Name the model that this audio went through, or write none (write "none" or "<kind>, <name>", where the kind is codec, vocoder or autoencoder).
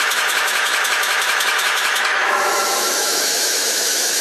autoencoder, DAC-VAE